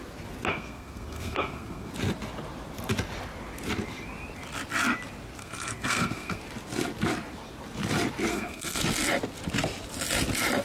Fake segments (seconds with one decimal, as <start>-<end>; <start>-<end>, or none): 0.5-1.9; 5.4-6.4; 8.3-8.8